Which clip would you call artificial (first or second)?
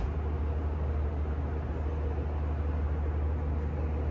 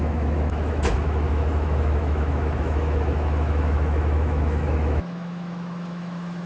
second